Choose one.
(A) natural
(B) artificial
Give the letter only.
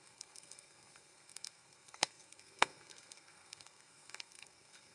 B